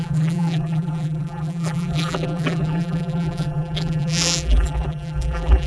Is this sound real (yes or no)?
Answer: no